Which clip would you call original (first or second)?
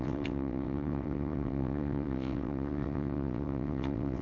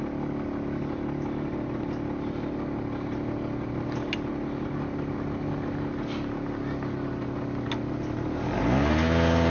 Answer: second